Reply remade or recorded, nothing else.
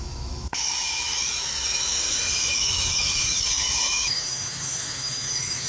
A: remade